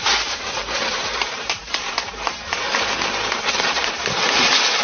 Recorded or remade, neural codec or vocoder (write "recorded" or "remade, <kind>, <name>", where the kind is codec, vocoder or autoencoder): remade, vocoder, BigVGAN v2